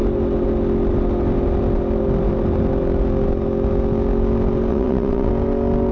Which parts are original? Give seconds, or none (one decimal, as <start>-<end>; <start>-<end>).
0.0-4.7; 5.3-5.9

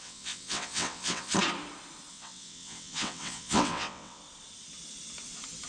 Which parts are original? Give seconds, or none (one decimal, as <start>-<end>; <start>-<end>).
1.3-2.1; 4.2-5.7

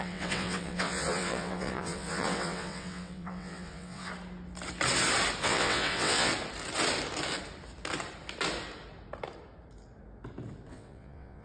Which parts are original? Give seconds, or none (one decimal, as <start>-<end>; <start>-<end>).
4.1-5.4; 6.3-10.7

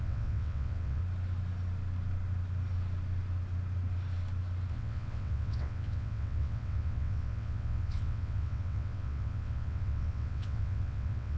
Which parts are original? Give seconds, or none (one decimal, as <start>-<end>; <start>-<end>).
1.0-4.7